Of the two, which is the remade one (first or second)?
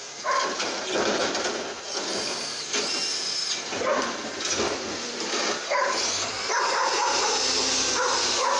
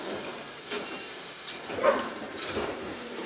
second